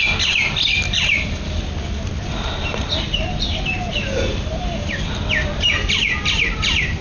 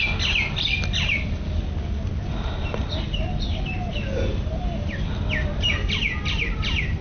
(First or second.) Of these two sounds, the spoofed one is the first